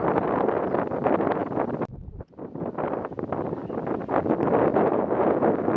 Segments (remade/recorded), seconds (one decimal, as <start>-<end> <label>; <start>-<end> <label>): 0.0-5.8 recorded